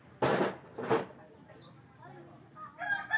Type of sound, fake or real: real